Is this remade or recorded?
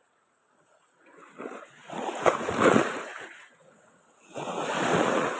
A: remade